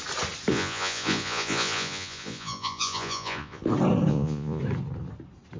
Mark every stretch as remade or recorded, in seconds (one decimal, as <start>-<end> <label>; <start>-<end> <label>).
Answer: 0.0-0.5 recorded; 0.5-3.6 remade; 3.6-4.1 recorded; 4.1-4.6 remade; 4.6-5.6 recorded